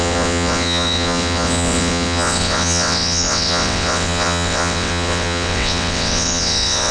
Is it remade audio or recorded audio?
remade